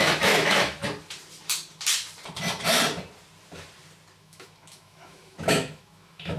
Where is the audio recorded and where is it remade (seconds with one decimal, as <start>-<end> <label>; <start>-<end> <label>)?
0.0-0.8 remade; 0.8-4.2 recorded; 4.2-6.4 remade